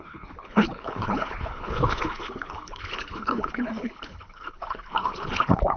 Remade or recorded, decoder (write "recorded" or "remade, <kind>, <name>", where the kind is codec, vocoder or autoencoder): remade, codec, HILCodec